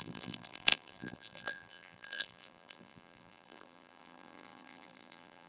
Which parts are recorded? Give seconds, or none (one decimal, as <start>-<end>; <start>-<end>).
none